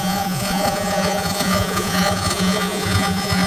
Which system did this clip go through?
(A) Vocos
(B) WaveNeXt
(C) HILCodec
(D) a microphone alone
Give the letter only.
A